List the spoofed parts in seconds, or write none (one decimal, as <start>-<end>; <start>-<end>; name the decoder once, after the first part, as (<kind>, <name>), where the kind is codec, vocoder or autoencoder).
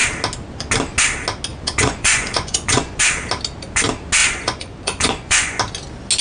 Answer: 1.5-3.0 (vocoder, Vocos); 4.2-5.6